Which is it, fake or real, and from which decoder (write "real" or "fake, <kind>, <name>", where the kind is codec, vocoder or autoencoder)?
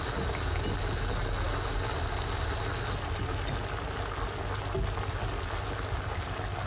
real